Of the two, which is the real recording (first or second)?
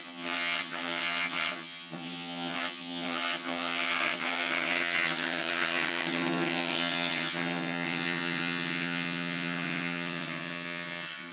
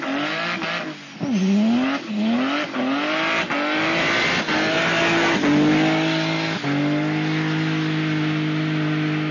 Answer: second